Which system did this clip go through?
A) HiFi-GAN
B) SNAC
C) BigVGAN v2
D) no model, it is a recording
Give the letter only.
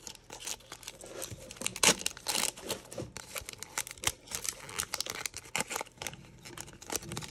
D